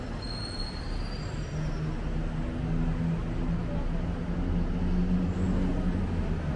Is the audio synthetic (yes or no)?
no